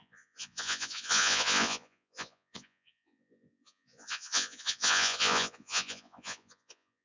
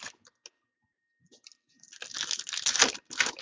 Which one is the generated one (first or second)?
first